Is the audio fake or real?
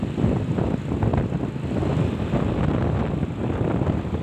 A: real